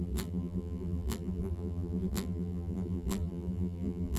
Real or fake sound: fake